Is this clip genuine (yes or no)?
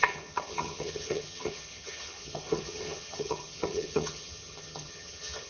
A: no